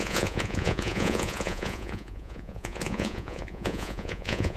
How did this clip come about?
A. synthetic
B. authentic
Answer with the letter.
A